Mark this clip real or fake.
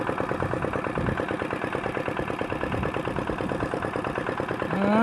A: real